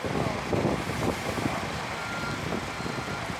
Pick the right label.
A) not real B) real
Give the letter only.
B